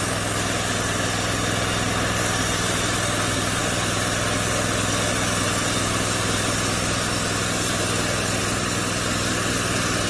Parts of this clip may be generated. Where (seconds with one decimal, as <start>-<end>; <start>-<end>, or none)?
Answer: none